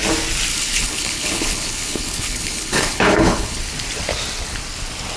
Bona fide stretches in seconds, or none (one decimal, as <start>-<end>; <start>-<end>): 0.0-0.5; 3.6-5.2